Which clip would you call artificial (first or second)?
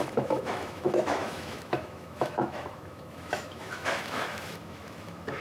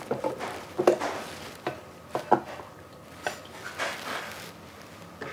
first